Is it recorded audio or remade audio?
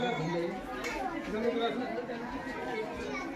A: recorded